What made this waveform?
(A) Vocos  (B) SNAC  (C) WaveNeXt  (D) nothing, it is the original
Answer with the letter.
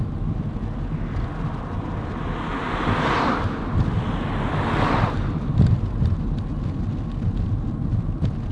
D